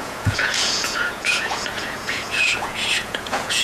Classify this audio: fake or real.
fake